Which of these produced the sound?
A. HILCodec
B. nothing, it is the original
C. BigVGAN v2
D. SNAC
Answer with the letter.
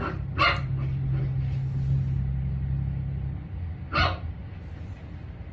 B